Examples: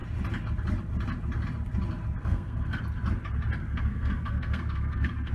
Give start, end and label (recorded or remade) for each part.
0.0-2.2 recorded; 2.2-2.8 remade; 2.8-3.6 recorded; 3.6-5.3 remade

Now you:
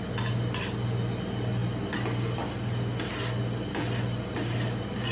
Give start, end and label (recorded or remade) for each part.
0.0-5.1 recorded

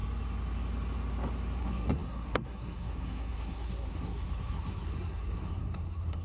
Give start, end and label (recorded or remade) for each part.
0.0-1.6 recorded; 1.6-6.2 remade

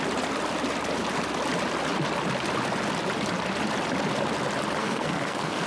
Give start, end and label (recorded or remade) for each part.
0.0-4.8 recorded; 4.8-5.7 remade